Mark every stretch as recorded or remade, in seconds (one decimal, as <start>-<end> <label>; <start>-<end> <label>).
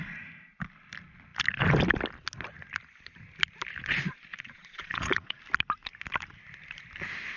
0.0-4.3 recorded; 4.3-5.4 remade; 5.4-7.4 recorded